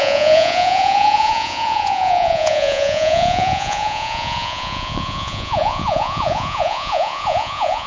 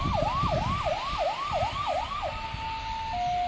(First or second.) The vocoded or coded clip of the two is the first